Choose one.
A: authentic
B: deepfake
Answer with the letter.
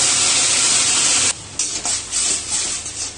A